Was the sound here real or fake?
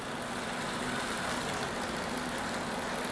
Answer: real